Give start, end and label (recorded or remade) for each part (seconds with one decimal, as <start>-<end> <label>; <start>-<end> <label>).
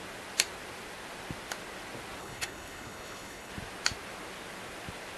0.0-2.2 recorded; 2.2-3.5 remade; 3.5-5.2 recorded